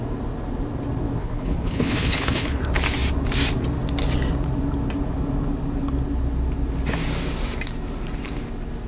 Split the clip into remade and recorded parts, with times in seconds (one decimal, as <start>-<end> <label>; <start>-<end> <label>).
0.0-1.2 recorded; 1.2-2.6 remade; 2.6-8.9 recorded